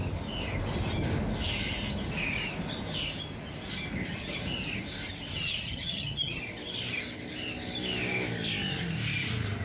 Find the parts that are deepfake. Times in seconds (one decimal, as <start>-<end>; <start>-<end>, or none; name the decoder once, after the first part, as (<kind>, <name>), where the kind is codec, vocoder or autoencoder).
5.3-6.4 (vocoder, HiFi-GAN)